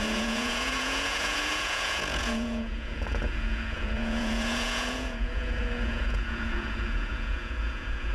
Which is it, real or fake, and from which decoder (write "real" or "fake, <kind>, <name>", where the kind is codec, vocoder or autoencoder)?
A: fake, vocoder, Vocos